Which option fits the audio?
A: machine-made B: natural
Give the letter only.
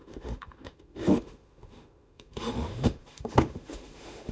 A